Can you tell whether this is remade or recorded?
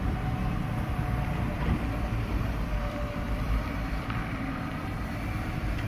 remade